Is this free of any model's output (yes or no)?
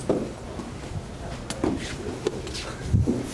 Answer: yes